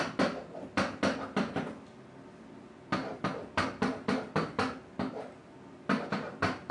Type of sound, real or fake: real